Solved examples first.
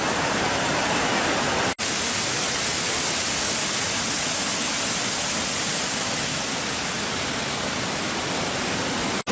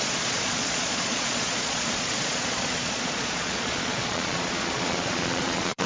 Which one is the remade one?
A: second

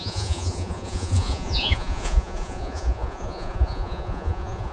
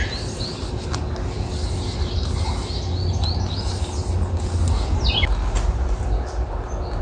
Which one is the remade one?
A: first